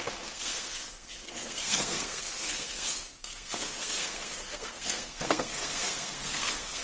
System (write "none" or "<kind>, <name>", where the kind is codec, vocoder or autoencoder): codec, SNAC